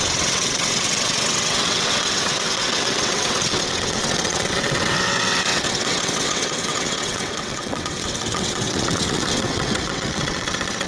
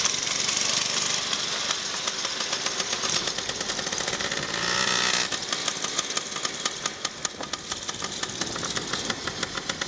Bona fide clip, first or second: second